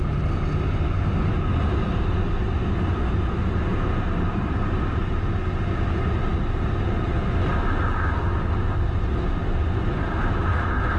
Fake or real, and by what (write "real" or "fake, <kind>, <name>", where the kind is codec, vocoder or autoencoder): real